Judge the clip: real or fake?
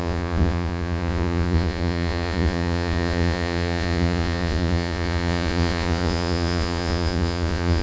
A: fake